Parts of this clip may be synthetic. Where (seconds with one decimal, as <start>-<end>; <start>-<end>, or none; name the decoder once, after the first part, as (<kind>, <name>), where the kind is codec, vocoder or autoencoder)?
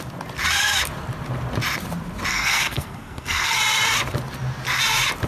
2.3-3.6 (codec, SNAC)